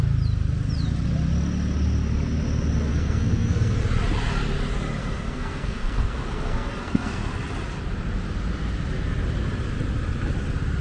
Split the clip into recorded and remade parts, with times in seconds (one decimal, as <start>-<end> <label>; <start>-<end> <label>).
0.0-2.9 recorded; 2.9-3.8 remade; 3.8-5.0 recorded; 5.0-7.3 remade; 7.3-10.8 recorded